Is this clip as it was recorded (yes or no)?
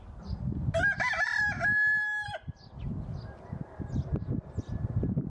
yes